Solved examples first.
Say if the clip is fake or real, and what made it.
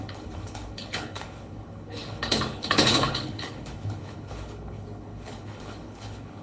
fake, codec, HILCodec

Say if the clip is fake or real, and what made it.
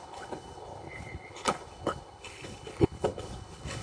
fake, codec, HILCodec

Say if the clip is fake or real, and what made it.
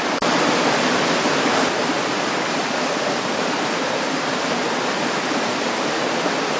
real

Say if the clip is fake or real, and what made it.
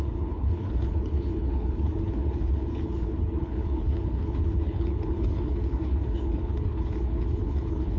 fake, codec, HILCodec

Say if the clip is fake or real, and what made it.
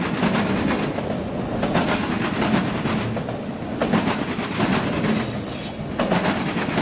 real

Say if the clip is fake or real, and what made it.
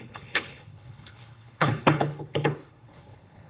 fake, codec, HILCodec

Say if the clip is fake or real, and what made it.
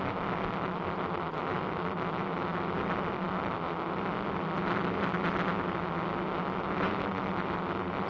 real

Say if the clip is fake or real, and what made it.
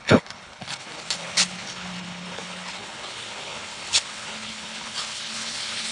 fake, codec, HILCodec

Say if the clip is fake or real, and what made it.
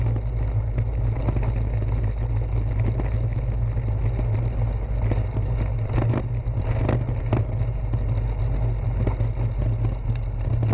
real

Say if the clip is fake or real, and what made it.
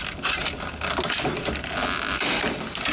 real